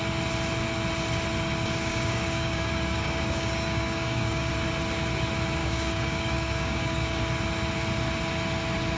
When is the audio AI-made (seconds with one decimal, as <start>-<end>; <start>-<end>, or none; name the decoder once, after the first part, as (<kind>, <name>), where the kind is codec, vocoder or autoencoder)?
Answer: 1.9-4.5 (codec, DAC); 5.6-7.2